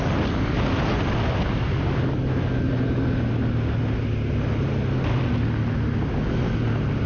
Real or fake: real